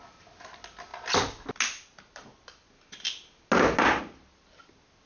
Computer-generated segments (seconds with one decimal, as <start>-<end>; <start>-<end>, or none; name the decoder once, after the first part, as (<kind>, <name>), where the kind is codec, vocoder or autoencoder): none